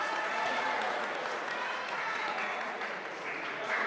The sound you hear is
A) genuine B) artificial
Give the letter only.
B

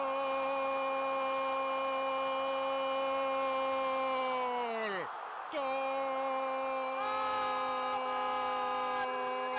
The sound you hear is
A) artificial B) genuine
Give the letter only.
B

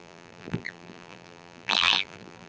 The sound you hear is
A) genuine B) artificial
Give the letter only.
B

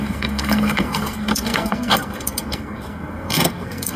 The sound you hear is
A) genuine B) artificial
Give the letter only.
B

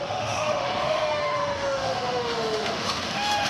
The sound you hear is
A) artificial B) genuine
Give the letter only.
A